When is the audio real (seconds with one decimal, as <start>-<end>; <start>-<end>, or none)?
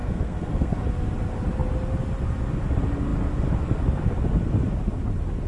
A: 0.7-5.5